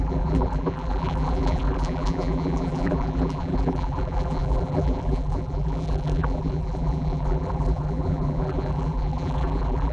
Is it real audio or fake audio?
fake